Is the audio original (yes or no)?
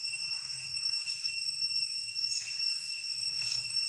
no